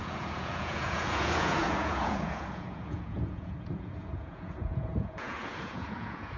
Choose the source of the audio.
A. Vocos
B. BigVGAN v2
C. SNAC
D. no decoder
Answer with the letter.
A